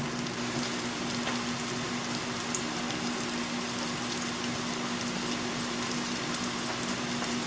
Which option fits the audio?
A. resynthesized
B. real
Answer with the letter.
B